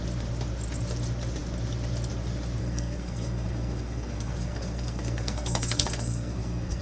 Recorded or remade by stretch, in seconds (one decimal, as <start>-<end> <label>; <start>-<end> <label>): 0.0-2.6 recorded; 2.6-6.8 remade